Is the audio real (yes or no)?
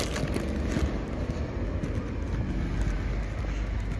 yes